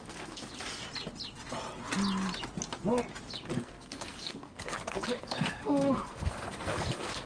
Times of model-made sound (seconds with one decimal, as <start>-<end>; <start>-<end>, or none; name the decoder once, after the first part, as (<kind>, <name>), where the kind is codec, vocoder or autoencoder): 0.0-0.4 (codec, SNAC); 3.6-7.3